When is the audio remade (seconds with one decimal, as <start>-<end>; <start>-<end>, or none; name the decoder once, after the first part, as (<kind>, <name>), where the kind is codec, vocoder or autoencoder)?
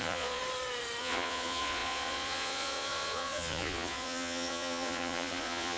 0.0-0.4 (vocoder, Vocos); 1.0-5.8